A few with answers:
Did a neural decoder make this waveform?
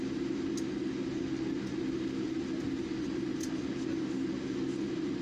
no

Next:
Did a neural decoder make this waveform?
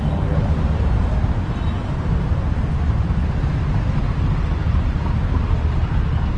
no